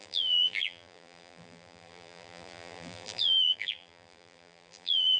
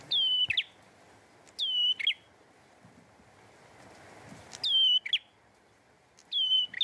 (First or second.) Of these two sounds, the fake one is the first